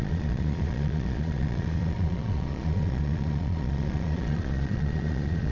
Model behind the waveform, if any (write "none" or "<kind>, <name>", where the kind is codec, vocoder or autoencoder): vocoder, Vocos